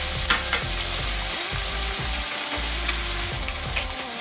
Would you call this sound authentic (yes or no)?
yes